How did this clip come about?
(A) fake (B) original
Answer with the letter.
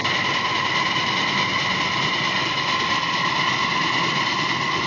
B